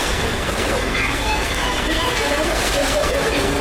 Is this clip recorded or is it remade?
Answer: remade